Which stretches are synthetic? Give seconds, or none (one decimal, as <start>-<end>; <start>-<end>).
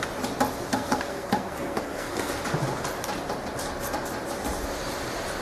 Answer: 0.7-2.3